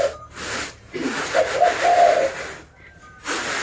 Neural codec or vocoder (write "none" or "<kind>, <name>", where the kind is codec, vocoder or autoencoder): none